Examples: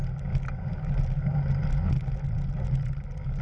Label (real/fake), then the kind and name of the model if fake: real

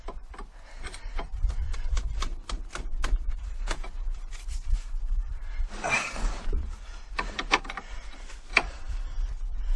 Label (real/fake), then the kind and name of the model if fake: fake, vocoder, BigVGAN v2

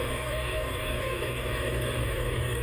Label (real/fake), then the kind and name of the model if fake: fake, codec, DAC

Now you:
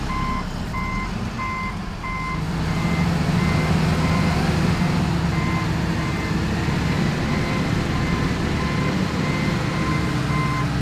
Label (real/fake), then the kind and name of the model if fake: real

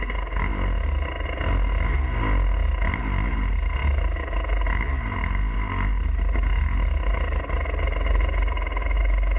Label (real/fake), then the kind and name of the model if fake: real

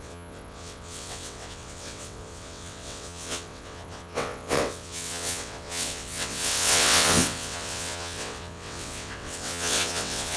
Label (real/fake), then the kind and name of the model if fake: fake, vocoder, WaveNeXt